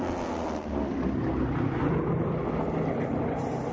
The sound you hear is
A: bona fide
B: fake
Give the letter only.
A